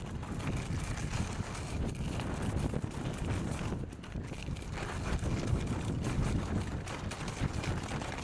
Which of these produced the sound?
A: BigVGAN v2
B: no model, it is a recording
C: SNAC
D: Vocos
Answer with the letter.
B